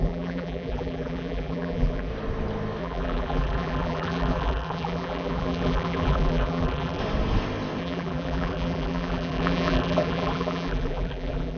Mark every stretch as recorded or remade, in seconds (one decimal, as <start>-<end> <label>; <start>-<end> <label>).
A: 0.0-2.1 remade; 2.1-2.8 recorded; 2.8-7.0 remade; 7.0-7.8 recorded; 7.8-11.6 remade